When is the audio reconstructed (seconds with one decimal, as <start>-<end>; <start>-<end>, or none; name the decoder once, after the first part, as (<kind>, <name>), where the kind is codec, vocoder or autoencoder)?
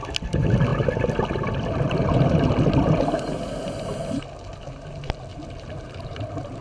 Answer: 5.3-6.6 (vocoder, BigVGAN v2)